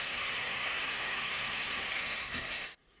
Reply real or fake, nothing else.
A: fake